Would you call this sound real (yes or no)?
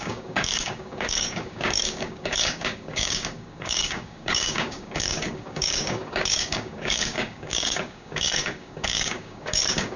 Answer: no